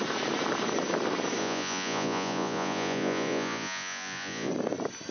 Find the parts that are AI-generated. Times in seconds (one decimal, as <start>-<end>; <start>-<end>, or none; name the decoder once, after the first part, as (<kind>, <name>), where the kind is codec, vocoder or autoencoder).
1.4-4.5 (vocoder, Vocos)